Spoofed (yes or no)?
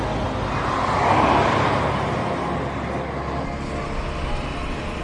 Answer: no